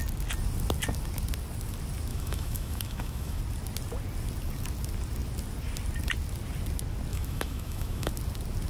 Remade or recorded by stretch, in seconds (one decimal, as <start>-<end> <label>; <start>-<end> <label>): 0.0-2.1 recorded; 2.1-3.4 remade; 3.4-7.1 recorded; 7.1-8.1 remade; 8.1-8.7 recorded